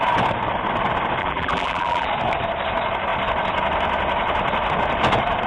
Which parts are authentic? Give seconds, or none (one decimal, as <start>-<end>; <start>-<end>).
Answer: 0.0-1.2; 2.1-5.5